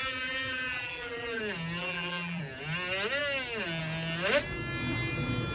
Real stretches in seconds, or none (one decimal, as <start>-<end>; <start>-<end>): 1.4-1.8; 2.4-5.5